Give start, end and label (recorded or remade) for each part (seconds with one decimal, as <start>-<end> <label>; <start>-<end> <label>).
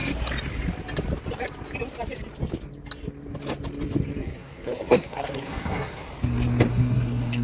0.0-4.2 recorded; 4.2-6.1 remade; 6.1-6.7 recorded; 6.7-7.4 remade